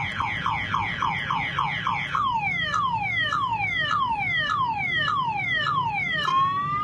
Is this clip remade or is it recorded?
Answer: recorded